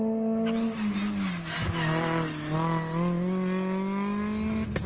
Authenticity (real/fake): real